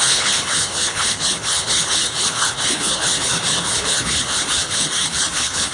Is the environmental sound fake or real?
fake